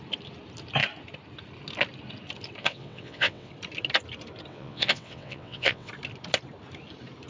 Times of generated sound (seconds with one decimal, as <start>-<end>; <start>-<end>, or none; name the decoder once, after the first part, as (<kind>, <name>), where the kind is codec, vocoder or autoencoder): 2.6-3.5 (vocoder, WaveNeXt); 4.5-5.9